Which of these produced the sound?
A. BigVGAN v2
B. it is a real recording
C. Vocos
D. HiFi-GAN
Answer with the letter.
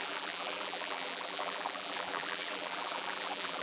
A